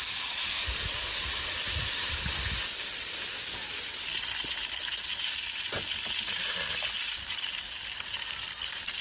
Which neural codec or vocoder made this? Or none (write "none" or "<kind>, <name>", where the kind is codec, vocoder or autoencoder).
none